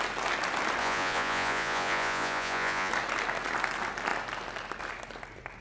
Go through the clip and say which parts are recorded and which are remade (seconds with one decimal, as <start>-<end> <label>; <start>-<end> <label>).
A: 0.0-0.8 recorded; 0.8-2.9 remade; 2.9-5.6 recorded